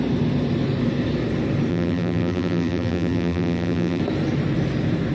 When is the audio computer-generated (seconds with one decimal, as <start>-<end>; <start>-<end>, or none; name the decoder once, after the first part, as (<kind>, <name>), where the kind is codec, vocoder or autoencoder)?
1.7-4.0 (vocoder, BigVGAN v2)